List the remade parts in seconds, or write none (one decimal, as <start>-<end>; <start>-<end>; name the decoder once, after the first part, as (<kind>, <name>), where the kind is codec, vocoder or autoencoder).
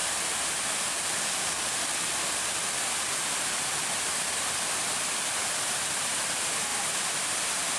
0.0-6.7 (vocoder, BigVGAN v2)